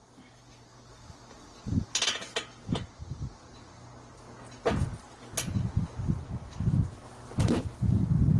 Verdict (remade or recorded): recorded